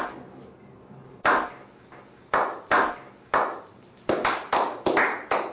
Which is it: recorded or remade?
recorded